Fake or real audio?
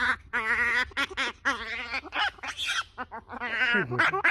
real